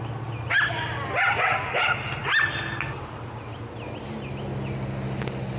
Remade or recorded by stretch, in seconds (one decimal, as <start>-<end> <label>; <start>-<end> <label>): 0.0-5.6 recorded